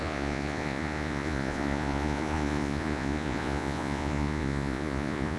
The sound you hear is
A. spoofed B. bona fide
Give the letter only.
A